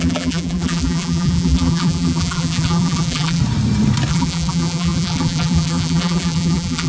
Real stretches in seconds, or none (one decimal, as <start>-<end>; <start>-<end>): 3.4-4.1